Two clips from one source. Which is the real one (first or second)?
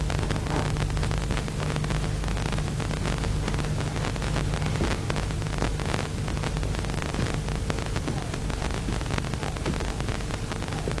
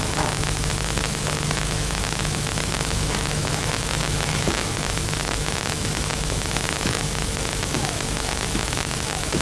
first